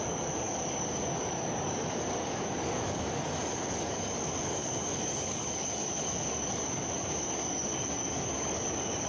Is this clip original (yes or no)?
no